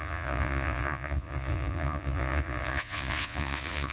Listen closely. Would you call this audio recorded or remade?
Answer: remade